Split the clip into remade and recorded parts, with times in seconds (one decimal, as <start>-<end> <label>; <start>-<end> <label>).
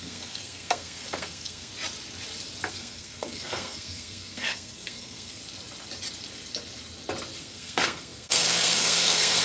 0.0-1.7 remade; 1.7-2.7 recorded; 2.7-5.4 remade; 5.4-7.4 recorded; 7.4-9.4 remade